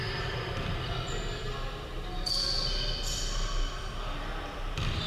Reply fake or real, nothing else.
real